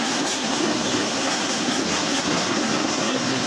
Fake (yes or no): yes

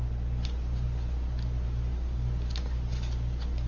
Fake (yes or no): no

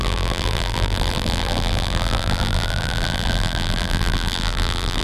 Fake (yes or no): yes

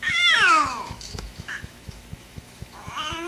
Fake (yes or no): yes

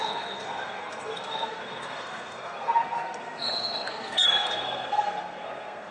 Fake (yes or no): yes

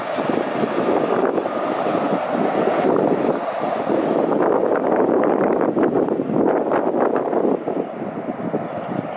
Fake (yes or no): no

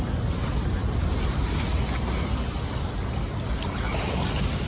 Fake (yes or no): no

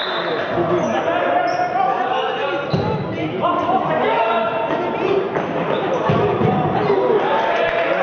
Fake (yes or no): no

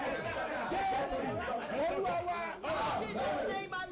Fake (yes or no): no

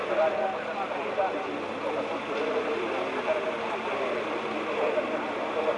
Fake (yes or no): no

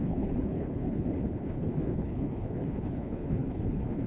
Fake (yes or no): yes